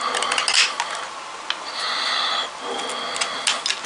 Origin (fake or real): real